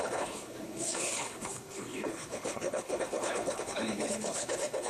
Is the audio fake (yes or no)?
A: yes